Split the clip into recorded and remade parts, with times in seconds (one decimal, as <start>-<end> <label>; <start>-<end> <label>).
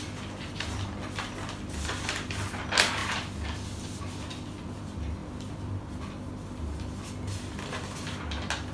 0.0-8.7 recorded